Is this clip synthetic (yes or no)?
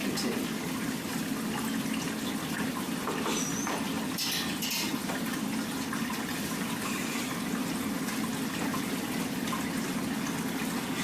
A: no